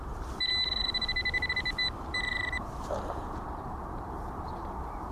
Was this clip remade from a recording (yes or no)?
yes